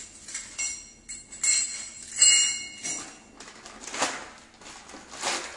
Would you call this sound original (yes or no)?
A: yes